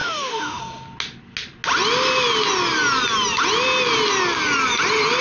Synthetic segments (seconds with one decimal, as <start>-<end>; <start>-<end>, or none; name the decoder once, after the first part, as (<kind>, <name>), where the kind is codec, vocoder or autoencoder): 0.0-0.6 (autoencoder, DAC-VAE)